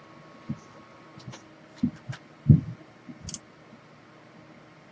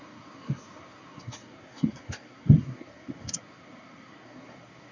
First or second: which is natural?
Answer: first